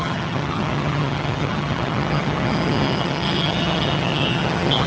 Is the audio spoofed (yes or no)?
yes